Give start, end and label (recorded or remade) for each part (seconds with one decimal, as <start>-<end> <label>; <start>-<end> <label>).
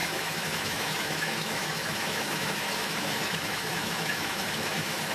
0.0-5.1 remade